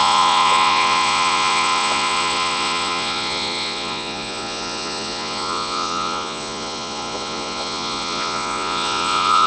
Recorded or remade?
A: remade